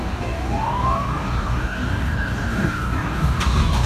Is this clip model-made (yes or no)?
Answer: yes